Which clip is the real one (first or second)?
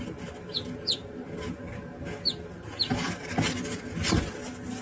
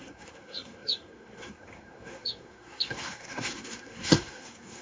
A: first